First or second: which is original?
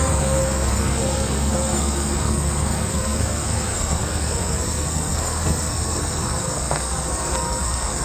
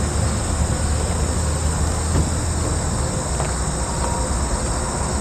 second